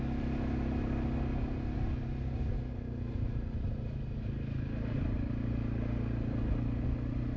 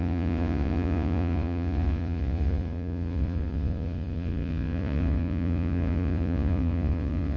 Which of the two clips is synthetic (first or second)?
second